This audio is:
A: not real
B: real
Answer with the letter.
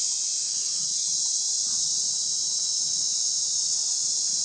A